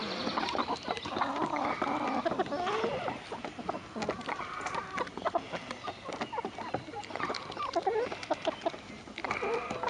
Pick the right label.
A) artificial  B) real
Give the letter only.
B